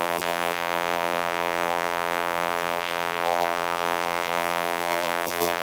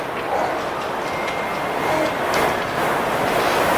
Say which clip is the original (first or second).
second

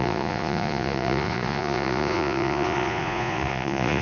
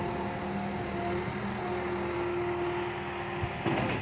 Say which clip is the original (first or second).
second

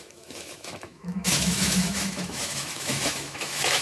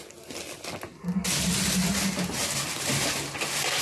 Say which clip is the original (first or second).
second